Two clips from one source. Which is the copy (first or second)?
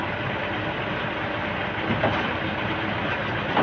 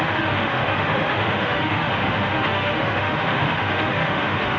second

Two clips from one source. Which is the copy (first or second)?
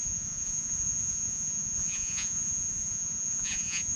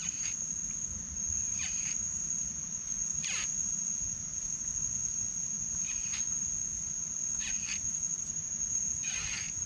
first